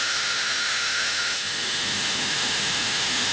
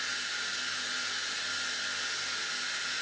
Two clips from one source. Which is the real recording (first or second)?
second